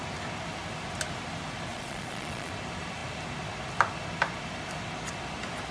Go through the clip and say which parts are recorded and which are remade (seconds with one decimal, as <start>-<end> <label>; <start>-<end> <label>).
0.0-1.7 recorded; 1.7-2.5 remade; 2.5-5.7 recorded